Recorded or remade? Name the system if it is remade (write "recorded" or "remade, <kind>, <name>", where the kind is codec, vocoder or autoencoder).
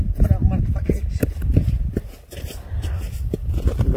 recorded